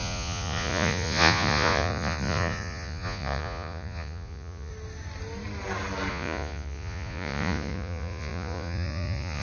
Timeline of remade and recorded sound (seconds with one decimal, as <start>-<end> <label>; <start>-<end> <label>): 0.0-4.7 remade; 4.7-6.1 recorded; 6.1-9.4 remade